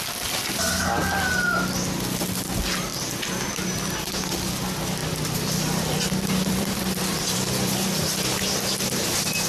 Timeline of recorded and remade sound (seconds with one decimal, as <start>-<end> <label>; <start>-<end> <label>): 0.0-2.9 recorded; 2.9-4.1 remade; 4.1-5.0 recorded; 5.0-7.7 remade; 7.7-9.5 recorded